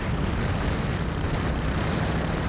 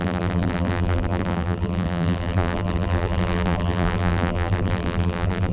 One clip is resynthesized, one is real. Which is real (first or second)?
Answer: first